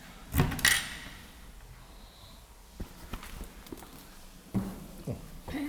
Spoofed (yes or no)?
no